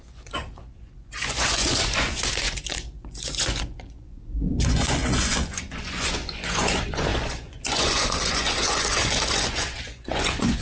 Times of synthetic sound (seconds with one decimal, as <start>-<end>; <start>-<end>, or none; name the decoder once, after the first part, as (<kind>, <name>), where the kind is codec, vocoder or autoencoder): 0.0-10.6 (vocoder, Vocos)